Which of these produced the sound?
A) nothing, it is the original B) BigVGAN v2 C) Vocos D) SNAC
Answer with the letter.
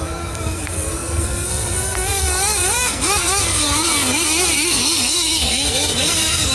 D